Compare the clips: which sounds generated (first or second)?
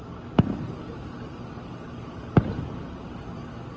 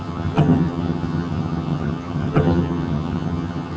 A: second